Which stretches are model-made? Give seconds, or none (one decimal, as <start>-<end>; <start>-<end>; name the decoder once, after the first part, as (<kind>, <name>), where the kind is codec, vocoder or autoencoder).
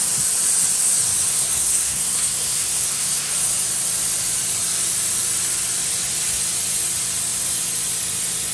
1.3-3.3 (codec, SNAC)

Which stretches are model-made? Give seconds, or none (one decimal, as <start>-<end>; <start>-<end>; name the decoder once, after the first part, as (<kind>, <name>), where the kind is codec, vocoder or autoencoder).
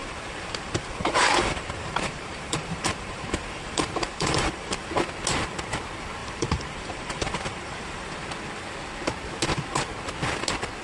0.0-4.9 (vocoder, BigVGAN v2); 6.2-8.2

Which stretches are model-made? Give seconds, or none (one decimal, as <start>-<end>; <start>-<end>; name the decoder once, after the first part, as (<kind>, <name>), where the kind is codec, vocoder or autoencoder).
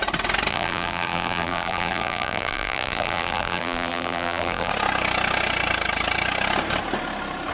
0.5-4.7 (vocoder, BigVGAN v2)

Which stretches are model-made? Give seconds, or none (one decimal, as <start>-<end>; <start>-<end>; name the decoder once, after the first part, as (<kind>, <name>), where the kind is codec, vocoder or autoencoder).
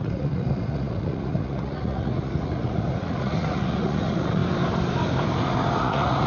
0.0-4.4 (vocoder, Vocos); 5.8-6.3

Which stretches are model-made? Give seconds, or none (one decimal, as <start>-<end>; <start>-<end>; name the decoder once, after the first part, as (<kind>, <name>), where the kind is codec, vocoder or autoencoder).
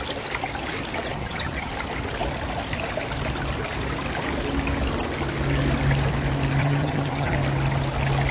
1.1-1.7 (vocoder, HiFi-GAN); 6.6-7.3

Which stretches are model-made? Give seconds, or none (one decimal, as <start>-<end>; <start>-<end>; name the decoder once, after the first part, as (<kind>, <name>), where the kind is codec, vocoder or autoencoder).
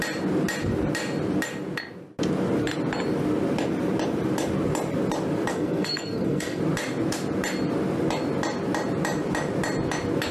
5.5-6.6 (codec, SNAC)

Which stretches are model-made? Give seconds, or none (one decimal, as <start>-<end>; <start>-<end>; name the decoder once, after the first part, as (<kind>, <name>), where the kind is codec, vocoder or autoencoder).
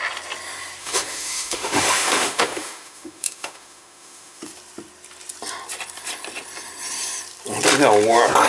0.8-4.4 (autoencoder, DAC-VAE)